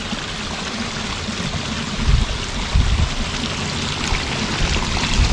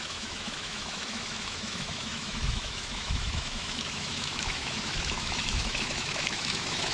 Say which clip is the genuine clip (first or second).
first